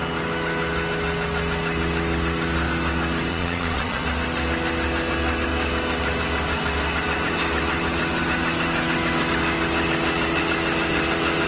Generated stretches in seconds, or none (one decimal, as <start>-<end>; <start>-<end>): 3.3-4.0